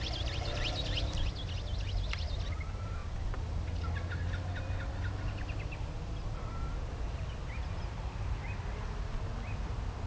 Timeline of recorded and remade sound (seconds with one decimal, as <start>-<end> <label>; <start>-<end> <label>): 0.0-10.1 recorded